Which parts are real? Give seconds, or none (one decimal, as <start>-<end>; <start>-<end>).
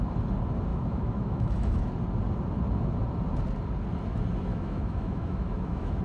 0.0-0.7; 1.9-4.5